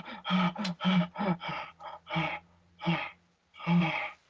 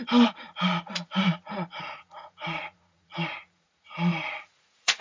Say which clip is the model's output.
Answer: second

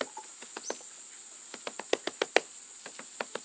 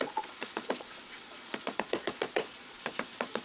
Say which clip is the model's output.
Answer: second